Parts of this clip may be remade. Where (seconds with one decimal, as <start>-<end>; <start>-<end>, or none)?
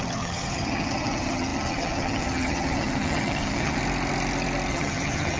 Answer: 0.0-3.8; 4.7-5.4